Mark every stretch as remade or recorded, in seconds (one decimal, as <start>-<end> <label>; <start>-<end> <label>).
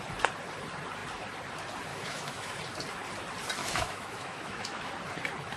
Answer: 0.0-1.9 recorded; 1.9-2.6 remade; 2.6-3.6 recorded; 3.6-4.9 remade; 4.9-5.6 recorded